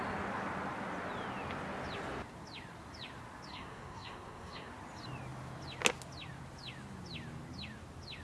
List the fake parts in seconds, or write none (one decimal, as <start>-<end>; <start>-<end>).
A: 3.5-4.7